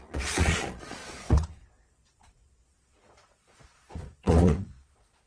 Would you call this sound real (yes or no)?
no